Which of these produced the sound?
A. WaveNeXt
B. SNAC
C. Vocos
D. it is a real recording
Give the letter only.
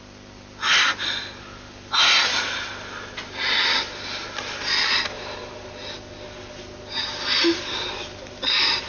D